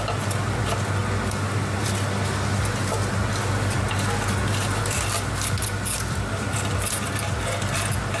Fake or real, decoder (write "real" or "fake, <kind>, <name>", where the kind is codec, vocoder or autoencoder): real